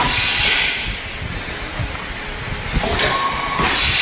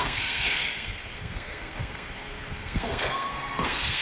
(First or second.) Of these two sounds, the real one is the first